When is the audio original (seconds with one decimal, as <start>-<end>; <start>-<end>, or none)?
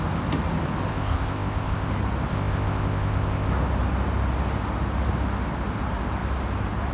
0.0-0.9; 1.9-2.3; 3.5-6.9